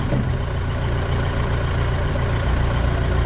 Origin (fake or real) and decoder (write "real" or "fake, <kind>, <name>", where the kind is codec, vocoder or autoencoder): real